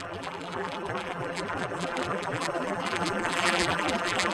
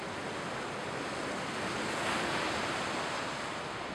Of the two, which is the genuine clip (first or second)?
second